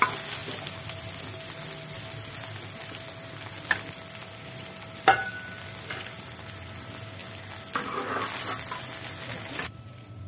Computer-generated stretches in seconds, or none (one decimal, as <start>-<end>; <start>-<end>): none